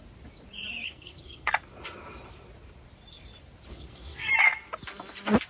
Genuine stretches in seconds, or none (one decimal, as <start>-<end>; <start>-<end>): 0.0-0.9; 1.5-3.7; 4.3-5.5